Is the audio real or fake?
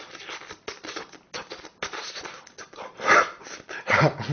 real